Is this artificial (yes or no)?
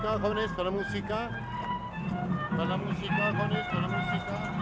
no